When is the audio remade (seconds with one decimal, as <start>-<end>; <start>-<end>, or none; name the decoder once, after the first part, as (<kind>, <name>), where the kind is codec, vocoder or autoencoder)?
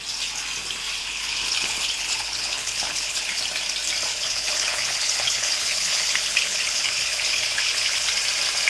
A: 1.0-3.4 (codec, HILCodec); 4.1-8.1